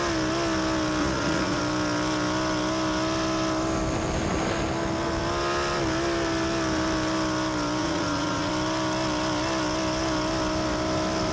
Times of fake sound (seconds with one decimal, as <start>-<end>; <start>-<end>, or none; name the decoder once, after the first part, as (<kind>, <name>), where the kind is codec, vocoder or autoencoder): 1.0-1.6 (vocoder, Vocos); 7.8-8.5